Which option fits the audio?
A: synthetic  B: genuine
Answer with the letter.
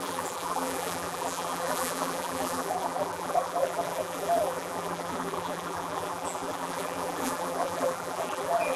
A